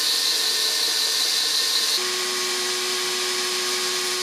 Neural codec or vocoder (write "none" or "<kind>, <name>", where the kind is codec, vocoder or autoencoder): none